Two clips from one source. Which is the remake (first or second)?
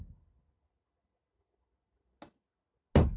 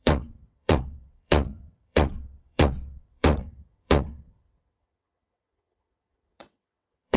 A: second